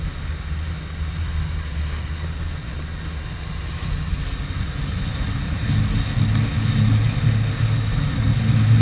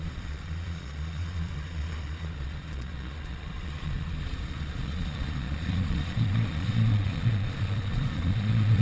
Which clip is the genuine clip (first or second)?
first